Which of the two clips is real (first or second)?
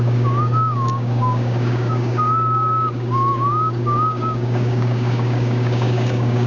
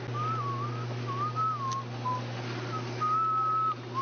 second